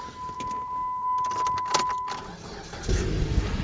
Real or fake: real